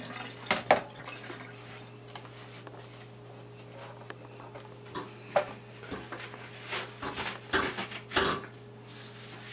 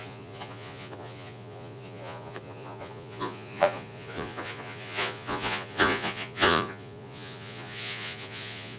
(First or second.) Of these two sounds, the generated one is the second